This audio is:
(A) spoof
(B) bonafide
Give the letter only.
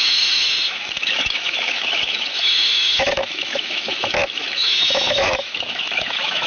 A